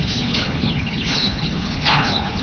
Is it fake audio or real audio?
fake